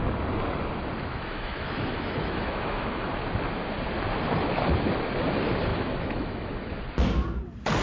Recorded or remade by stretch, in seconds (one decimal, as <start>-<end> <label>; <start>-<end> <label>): 0.0-1.1 recorded; 1.1-3.1 remade; 3.1-5.7 recorded; 5.7-6.8 remade; 6.8-7.8 recorded